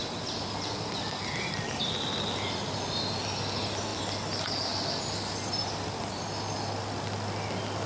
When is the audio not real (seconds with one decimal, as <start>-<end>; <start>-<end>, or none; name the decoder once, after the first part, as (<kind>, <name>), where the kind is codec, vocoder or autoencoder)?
none